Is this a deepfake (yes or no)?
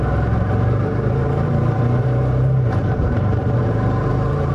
yes